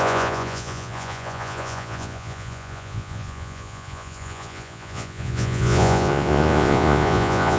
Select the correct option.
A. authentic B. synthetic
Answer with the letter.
B